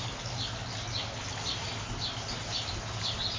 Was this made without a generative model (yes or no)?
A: yes